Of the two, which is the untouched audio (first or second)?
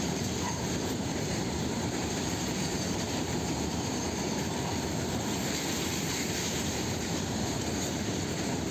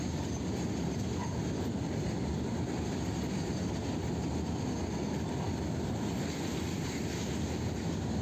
second